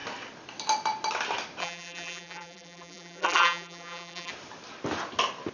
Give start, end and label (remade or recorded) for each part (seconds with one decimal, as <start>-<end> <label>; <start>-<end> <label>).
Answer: 0.0-1.6 recorded; 1.6-4.3 remade; 4.3-5.5 recorded